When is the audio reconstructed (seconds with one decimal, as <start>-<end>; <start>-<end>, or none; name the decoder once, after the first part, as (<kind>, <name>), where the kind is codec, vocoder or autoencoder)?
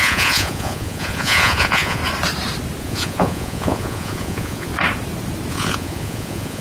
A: 0.0-2.0 (vocoder, Vocos); 2.8-4.7; 5.5-6.6